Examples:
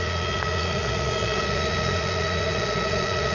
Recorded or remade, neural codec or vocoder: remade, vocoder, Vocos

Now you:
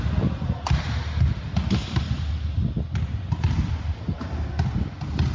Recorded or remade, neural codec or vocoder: recorded